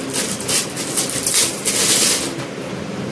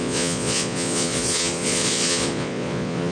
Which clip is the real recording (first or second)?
first